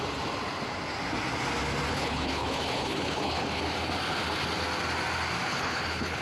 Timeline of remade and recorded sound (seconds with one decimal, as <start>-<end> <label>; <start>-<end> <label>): 0.0-1.9 recorded; 1.9-3.6 remade; 3.6-5.5 recorded; 5.5-6.2 remade